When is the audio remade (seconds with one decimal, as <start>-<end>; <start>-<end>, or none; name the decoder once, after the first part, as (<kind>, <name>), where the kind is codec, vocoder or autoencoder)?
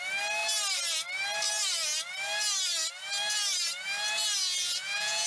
4.4-5.3 (vocoder, Vocos)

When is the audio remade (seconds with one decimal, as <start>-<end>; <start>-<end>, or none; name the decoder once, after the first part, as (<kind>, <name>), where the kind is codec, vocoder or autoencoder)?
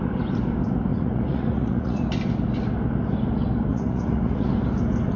0.9-2.0 (vocoder, Vocos); 3.7-4.5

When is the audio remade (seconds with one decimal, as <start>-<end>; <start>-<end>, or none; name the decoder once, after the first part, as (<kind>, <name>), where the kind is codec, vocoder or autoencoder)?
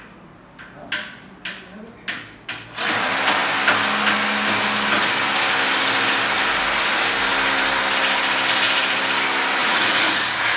9.6-10.6 (vocoder, Vocos)